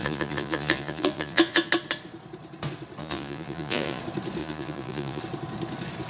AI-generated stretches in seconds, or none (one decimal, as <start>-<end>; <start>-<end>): 0.0-1.7; 3.0-4.0; 4.4-5.2